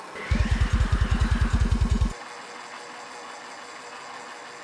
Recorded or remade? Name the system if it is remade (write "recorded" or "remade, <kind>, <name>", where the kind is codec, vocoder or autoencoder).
recorded